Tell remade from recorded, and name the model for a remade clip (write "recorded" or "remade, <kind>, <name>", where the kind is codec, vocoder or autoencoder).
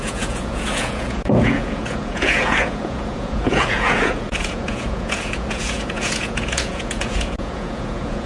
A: remade, vocoder, Vocos